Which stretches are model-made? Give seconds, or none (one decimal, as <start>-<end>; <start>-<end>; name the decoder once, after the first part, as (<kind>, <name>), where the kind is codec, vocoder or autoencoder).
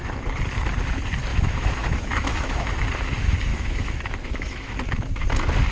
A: 1.3-2.8 (autoencoder, DAC-VAE); 3.5-4.7